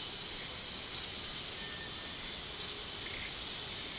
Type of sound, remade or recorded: recorded